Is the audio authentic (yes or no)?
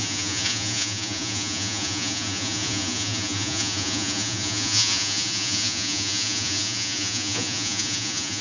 no